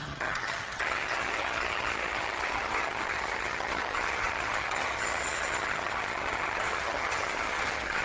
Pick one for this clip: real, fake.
fake